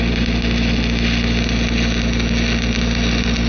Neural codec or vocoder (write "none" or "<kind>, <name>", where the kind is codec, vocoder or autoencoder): none